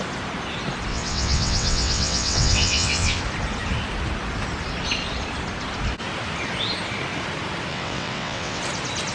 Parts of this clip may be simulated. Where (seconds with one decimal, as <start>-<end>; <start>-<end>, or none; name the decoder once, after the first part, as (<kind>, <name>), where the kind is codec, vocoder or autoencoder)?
0.9-3.2 (vocoder, WaveNeXt); 7.7-8.6